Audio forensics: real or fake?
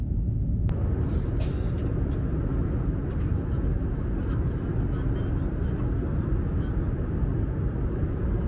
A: real